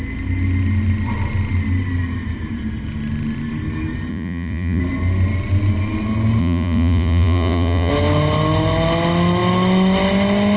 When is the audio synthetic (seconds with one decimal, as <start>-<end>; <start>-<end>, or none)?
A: 4.1-4.8; 6.4-7.9